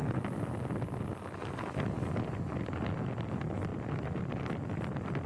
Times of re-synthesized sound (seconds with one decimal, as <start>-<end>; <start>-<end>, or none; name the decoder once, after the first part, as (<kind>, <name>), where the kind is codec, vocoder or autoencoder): none